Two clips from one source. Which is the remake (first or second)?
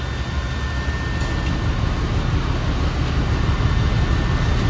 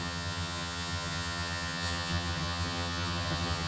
second